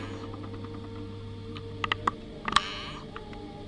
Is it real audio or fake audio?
real